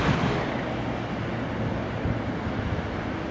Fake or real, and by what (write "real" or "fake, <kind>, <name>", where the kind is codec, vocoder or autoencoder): real